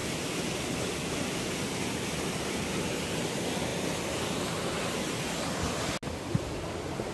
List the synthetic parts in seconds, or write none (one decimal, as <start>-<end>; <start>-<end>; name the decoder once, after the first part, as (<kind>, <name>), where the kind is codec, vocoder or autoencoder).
none